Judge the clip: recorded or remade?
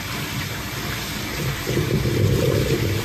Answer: recorded